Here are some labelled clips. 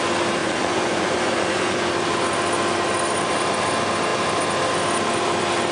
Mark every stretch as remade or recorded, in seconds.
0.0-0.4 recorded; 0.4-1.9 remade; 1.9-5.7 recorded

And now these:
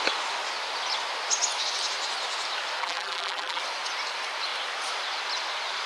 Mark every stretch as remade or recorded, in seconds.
0.0-2.8 recorded; 2.8-3.6 remade; 3.6-5.9 recorded

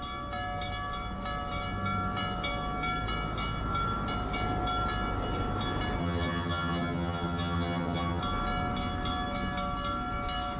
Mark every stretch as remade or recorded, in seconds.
0.0-6.0 recorded; 6.0-8.2 remade; 8.2-10.6 recorded

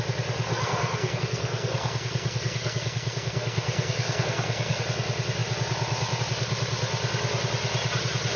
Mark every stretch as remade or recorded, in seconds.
0.0-0.5 recorded; 0.5-4.8 remade; 4.8-8.4 recorded

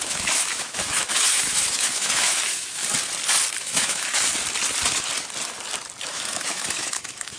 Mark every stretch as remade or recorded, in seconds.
0.0-2.8 remade; 2.8-3.6 recorded; 3.6-4.3 remade; 4.3-6.1 recorded; 6.1-7.4 remade

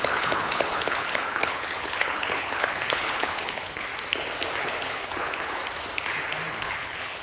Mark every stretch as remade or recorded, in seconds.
0.0-3.9 remade; 3.9-4.6 recorded; 4.6-5.6 remade; 5.6-6.5 recorded; 6.5-7.2 remade